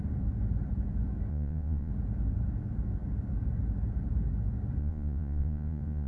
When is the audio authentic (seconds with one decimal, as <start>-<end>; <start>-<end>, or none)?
0.0-1.3; 1.9-4.8